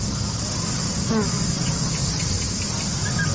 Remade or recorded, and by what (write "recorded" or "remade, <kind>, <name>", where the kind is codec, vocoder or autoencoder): recorded